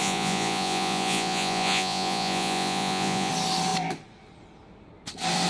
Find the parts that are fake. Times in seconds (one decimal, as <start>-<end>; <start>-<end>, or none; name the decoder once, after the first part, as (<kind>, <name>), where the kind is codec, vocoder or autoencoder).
0.0-3.3 (vocoder, Vocos)